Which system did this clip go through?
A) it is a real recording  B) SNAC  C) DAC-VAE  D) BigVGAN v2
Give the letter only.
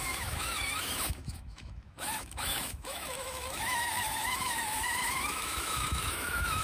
C